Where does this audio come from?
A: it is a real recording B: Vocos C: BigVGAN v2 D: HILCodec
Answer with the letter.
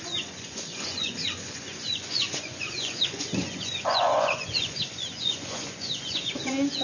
B